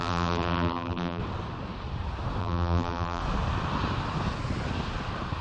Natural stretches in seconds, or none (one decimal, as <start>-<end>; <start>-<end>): 1.2-2.4; 3.2-5.4